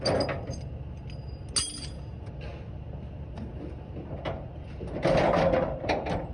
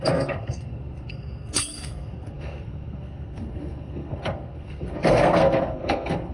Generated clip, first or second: second